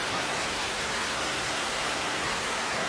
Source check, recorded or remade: remade